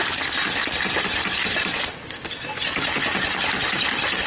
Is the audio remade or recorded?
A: recorded